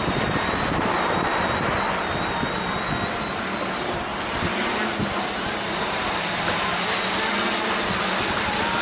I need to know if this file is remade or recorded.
recorded